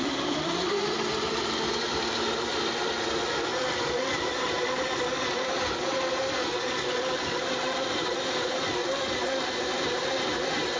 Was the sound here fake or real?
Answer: fake